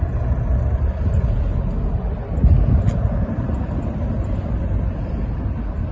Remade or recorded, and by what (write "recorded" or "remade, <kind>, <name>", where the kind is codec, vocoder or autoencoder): recorded